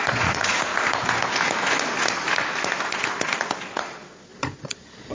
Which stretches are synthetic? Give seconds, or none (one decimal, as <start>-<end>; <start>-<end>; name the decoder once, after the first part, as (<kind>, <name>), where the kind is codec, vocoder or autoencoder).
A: 0.0-0.7 (vocoder, Vocos); 3.8-5.1